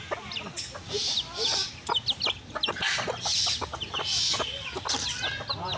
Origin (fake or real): real